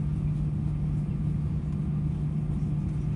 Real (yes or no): yes